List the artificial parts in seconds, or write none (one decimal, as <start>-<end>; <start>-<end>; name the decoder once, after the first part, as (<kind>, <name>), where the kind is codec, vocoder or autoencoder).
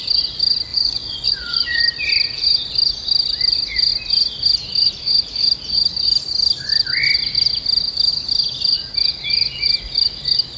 0.7-1.8 (vocoder, Vocos)